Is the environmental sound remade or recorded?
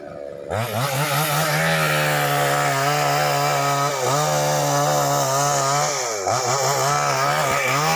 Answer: recorded